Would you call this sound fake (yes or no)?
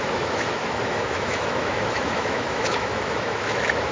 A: yes